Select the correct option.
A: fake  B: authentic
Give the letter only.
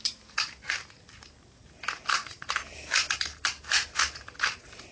B